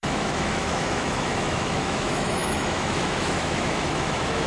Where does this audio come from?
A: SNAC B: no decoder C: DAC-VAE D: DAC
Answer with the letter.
C